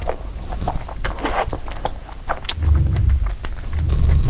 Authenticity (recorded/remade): recorded